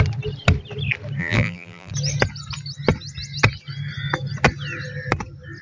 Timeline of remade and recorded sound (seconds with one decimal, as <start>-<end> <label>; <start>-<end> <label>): 0.0-1.2 recorded; 1.2-1.9 remade; 1.9-5.6 recorded

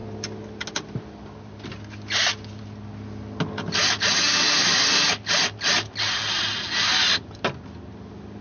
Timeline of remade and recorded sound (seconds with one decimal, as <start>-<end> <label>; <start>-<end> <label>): 0.0-8.4 recorded

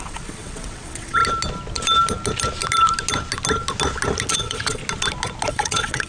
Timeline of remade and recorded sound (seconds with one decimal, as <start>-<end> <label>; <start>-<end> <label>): 0.0-1.2 remade; 1.2-4.3 recorded; 4.3-4.8 remade; 4.8-5.5 recorded; 5.5-6.1 remade